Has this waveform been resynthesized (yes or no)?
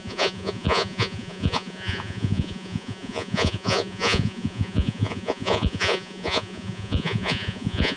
yes